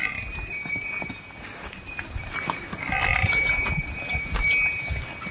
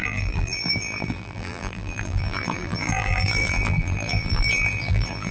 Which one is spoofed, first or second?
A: second